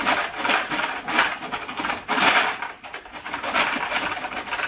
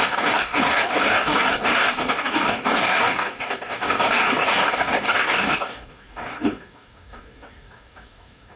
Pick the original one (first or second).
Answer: first